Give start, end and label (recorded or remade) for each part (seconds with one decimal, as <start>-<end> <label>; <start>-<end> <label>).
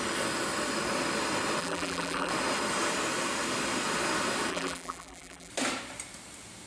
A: 0.0-1.6 recorded; 1.6-2.3 remade; 2.3-4.5 recorded; 4.5-5.5 remade; 5.5-6.7 recorded